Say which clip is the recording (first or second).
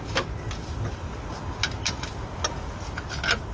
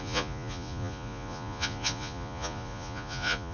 first